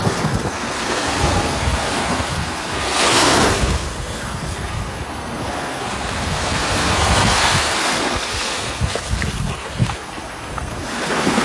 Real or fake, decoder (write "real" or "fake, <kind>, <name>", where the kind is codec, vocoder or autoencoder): fake, codec, SNAC